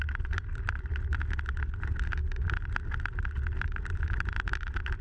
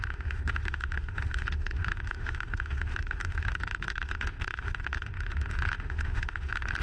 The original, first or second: first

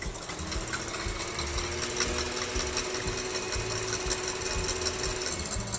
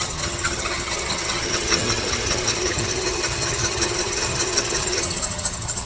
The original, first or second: first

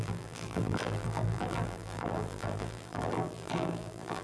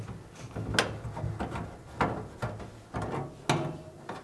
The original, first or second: second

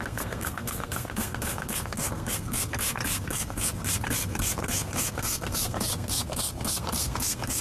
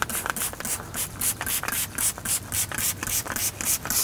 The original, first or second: second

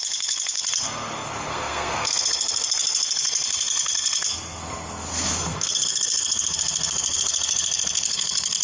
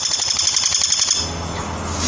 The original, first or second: second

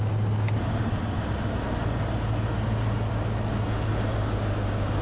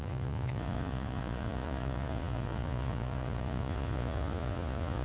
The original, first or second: first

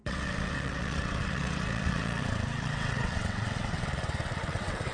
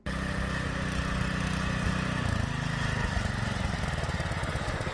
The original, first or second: second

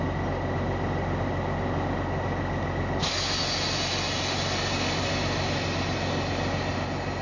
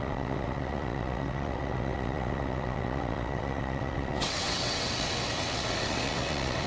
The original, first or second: first